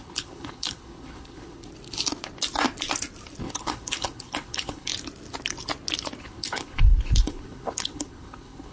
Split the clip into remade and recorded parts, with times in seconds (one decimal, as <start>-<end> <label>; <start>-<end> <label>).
0.0-1.7 remade; 1.7-3.4 recorded; 3.4-4.9 remade; 4.9-6.2 recorded; 6.2-8.7 remade